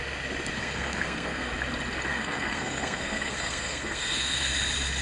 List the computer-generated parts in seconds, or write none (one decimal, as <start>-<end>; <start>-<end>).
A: 0.6-1.5; 2.1-4.5